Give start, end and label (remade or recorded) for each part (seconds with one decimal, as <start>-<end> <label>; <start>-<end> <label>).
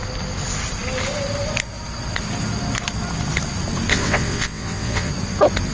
0.0-3.9 recorded; 3.9-5.1 remade; 5.1-5.7 recorded